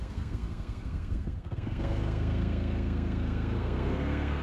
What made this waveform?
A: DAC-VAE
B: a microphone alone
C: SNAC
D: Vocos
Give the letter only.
C